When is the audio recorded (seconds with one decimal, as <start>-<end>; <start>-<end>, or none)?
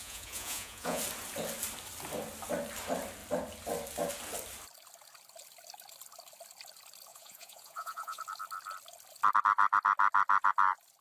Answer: 1.0-7.1; 8.2-11.0